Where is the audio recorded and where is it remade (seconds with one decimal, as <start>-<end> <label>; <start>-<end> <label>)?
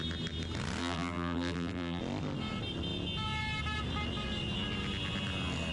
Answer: 0.0-0.8 recorded; 0.8-2.0 remade; 2.0-5.7 recorded